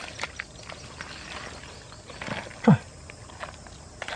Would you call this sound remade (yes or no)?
no